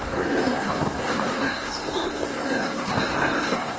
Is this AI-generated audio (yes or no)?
yes